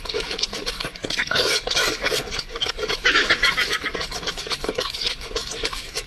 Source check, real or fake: fake